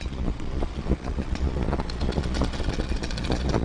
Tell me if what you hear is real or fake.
fake